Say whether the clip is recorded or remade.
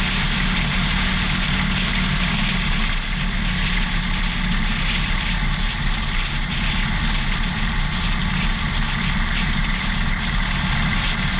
recorded